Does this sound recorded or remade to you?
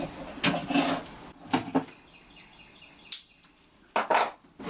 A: recorded